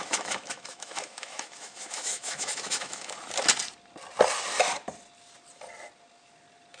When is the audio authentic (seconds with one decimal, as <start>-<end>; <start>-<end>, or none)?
3.1-6.8